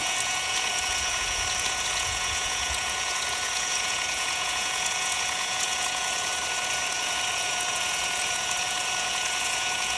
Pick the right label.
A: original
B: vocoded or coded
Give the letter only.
B